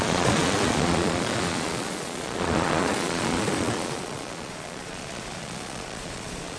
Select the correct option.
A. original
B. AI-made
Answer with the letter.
B